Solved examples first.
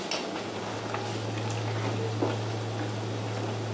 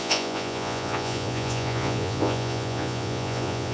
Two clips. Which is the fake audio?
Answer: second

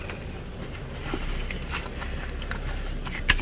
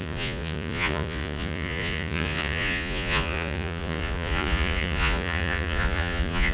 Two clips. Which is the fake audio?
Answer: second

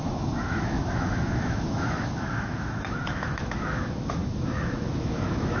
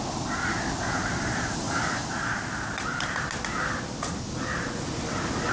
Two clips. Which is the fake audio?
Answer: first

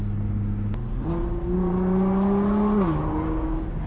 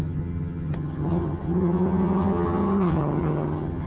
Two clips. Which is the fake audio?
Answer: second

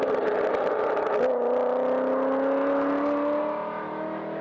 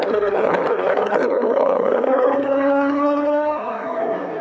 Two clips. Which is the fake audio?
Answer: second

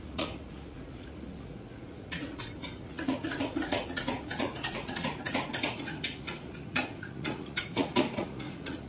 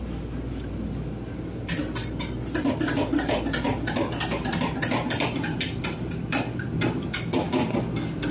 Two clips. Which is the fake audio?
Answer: first